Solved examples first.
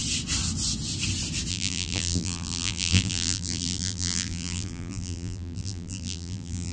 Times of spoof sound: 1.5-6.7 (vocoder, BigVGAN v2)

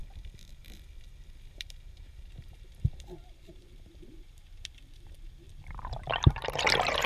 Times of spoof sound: 1.5-7.1 (vocoder, BigVGAN v2)

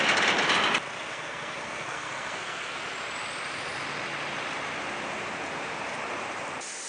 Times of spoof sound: 1.1-2.8 (codec, SNAC)

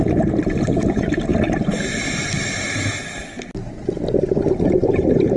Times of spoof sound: 0.0-1.3 (vocoder, BigVGAN v2); 4.5-5.4

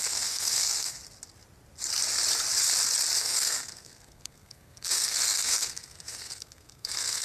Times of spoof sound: 0.0-1.0 (codec, SNAC); 3.2-7.2

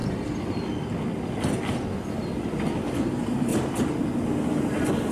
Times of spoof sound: 2.8-3.5 (vocoder, BigVGAN v2)